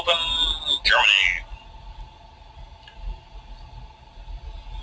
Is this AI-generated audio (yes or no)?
no